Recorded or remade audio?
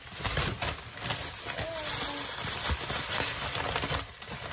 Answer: recorded